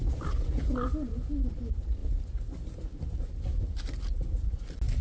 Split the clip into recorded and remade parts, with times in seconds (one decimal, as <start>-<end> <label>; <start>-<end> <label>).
0.0-5.0 recorded